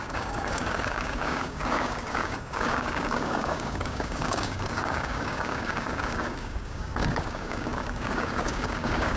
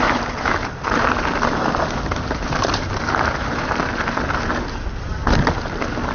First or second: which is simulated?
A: first